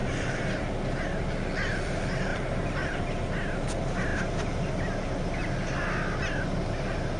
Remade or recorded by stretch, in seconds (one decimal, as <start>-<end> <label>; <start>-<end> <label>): 0.0-0.7 remade; 0.7-2.3 recorded; 2.3-3.0 remade; 3.0-7.2 recorded